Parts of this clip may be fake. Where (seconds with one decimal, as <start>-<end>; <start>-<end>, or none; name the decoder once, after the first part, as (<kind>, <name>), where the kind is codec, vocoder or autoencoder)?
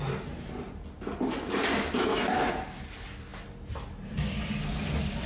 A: 1.7-2.5 (autoencoder, DAC-VAE)